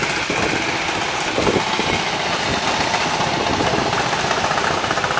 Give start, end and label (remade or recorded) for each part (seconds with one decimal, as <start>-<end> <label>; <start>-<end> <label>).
0.0-5.2 recorded